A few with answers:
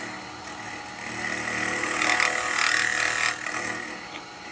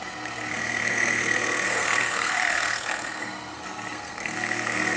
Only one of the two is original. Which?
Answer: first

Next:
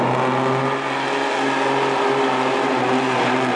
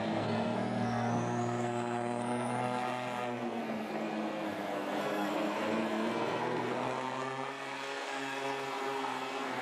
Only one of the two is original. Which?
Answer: first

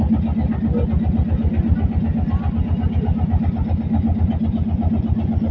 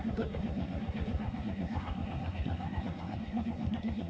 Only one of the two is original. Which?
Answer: first